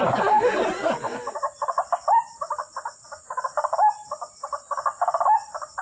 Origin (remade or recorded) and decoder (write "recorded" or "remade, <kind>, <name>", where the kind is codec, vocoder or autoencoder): recorded